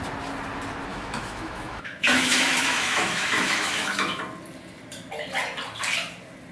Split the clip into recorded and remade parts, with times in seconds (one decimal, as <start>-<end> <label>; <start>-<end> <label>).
0.0-0.9 recorded; 0.9-4.2 remade; 4.2-6.5 recorded